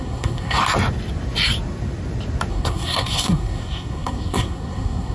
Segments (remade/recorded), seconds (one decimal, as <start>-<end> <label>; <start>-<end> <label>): 0.0-0.6 remade; 0.6-2.5 recorded; 2.5-5.1 remade